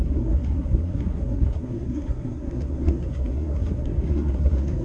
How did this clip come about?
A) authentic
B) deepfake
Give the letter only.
B